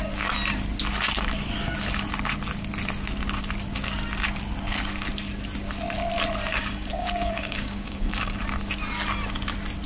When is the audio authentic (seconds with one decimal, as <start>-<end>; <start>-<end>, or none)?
0.0-6.5; 8.4-9.9